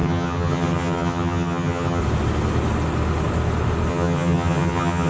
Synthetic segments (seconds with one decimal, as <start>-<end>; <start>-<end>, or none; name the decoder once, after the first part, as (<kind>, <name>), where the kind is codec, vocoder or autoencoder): 0.0-2.0 (vocoder, HiFi-GAN); 3.9-5.1